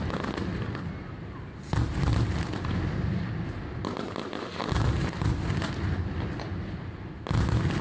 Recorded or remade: recorded